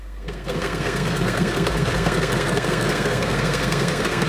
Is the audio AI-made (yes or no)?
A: yes